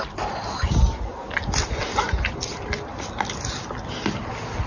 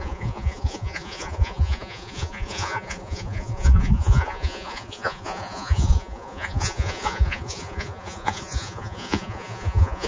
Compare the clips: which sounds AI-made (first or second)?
second